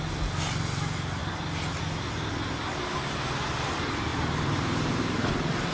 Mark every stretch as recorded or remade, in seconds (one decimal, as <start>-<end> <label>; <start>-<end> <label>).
0.0-4.1 recorded; 4.1-5.3 remade; 5.3-5.7 recorded